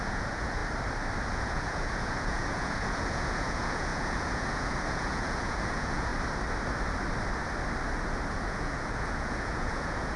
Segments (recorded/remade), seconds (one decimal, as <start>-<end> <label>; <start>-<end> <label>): 0.0-0.6 remade; 0.6-1.3 recorded; 1.3-6.1 remade; 6.1-8.3 recorded; 8.3-10.2 remade